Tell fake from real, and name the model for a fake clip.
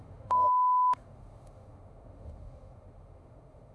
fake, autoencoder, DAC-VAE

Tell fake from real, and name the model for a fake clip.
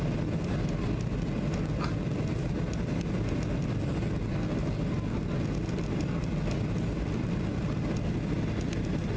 real